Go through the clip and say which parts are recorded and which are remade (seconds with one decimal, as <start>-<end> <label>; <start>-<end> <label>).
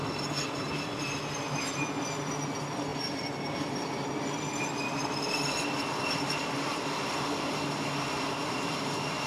0.0-2.9 recorded; 2.9-7.0 remade; 7.0-8.4 recorded; 8.4-9.3 remade